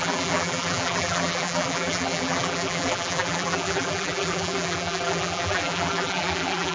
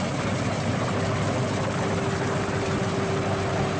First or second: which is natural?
second